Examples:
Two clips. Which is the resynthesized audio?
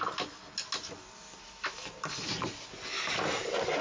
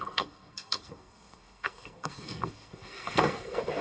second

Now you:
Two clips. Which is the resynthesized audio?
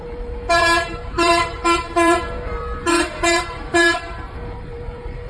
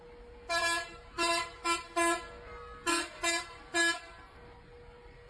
first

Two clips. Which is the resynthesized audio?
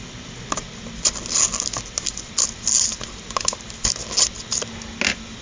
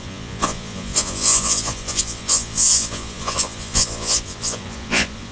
second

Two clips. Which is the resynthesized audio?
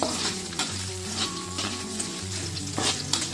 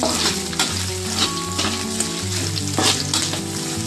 first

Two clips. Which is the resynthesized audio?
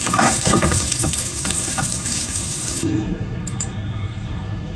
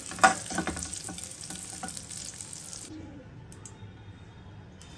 first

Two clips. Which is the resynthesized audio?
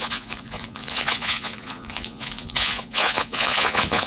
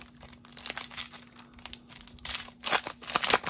first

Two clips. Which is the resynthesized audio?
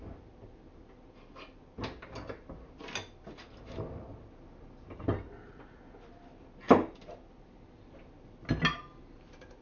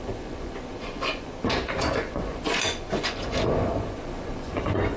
second